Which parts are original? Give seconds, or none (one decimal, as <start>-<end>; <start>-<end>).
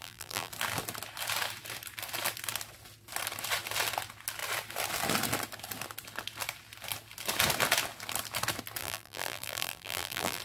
0.5-8.8